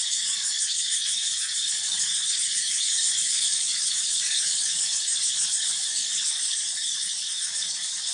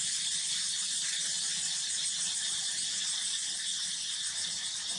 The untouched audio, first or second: second